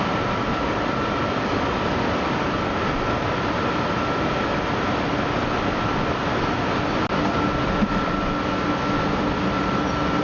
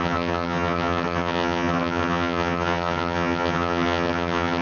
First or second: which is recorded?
first